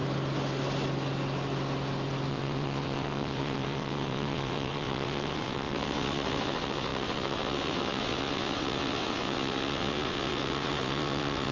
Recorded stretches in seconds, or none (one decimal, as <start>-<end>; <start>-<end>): 0.0-2.3